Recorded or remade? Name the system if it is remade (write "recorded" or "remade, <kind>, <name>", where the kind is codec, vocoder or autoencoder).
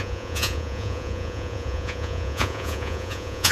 remade, vocoder, Vocos